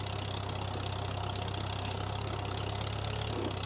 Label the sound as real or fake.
real